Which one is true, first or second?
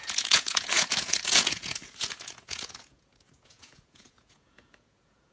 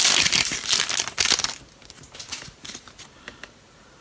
second